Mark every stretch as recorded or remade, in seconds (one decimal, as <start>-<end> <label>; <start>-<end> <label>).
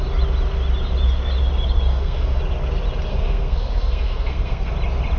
0.0-1.9 recorded; 1.9-2.4 remade; 2.4-3.1 recorded; 3.1-4.7 remade; 4.7-5.2 recorded